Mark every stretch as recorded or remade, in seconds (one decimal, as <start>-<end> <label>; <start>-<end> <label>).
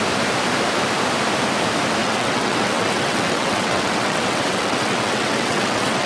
0.0-2.0 recorded; 2.0-6.1 remade